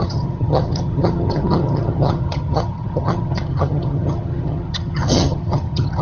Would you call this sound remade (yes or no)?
yes